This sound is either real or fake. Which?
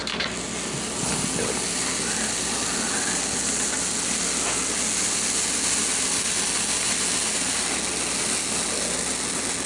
real